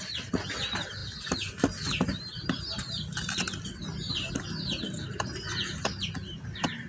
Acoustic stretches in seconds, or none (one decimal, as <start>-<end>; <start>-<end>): 0.0-6.9